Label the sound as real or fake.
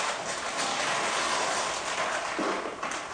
real